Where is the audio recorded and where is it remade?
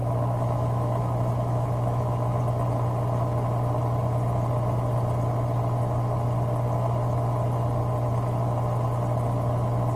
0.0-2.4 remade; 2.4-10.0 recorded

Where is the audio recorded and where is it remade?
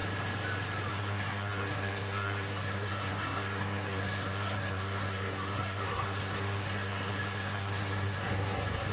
0.0-0.9 recorded; 0.9-8.9 remade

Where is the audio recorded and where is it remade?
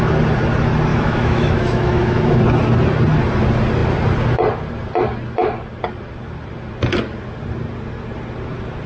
0.0-0.9 recorded; 0.9-2.4 remade; 2.4-8.9 recorded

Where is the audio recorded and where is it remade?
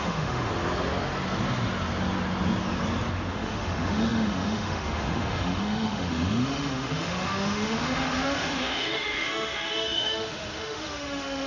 0.0-0.5 remade; 0.5-3.3 recorded; 3.3-11.5 remade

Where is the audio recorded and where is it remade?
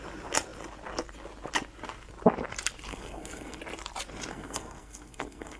0.0-2.9 recorded; 2.9-3.6 remade; 3.6-4.3 recorded; 4.3-5.6 remade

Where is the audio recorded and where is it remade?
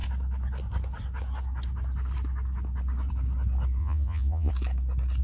0.0-3.8 recorded; 3.8-4.5 remade; 4.5-5.2 recorded